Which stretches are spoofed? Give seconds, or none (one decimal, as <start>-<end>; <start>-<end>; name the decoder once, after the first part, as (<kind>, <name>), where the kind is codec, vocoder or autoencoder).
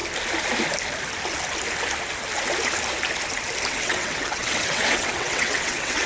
3.7-6.1 (vocoder, WaveNeXt)